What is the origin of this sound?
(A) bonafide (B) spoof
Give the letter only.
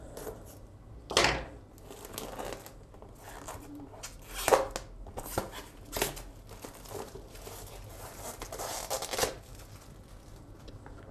A